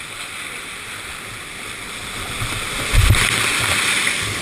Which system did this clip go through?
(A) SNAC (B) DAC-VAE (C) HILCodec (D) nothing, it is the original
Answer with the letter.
D